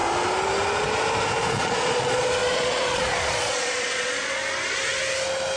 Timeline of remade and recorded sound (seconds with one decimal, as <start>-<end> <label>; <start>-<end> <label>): 0.0-1.4 recorded; 1.4-4.4 remade; 4.4-5.6 recorded